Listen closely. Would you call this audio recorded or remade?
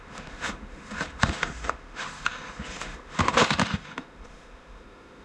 remade